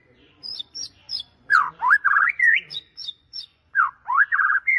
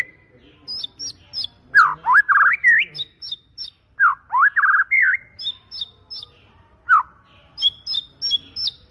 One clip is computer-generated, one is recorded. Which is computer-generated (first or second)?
first